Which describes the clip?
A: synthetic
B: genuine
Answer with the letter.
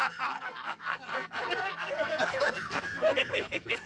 A